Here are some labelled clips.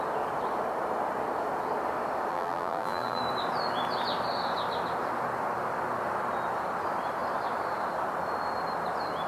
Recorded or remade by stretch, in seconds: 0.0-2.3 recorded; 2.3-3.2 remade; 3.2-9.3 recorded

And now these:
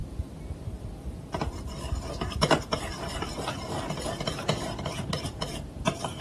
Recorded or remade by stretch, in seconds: 0.0-2.8 recorded; 2.8-6.2 remade